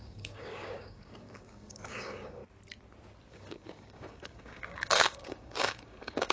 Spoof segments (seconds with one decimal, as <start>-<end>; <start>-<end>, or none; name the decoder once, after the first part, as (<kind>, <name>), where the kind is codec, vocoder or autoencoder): 0.0-2.4 (codec, DAC); 3.3-6.3